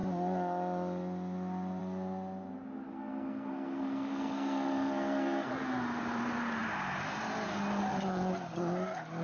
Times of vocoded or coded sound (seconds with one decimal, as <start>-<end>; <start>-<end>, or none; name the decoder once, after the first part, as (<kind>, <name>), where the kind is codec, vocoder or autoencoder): 2.9-5.5 (codec, SNAC)